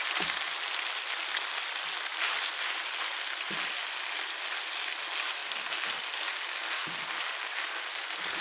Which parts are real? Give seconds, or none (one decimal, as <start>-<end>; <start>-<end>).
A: 0.0-8.4